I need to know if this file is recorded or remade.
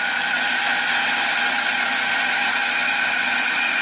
recorded